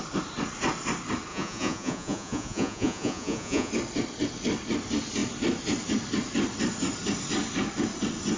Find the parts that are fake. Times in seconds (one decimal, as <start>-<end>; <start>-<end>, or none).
1.3-3.7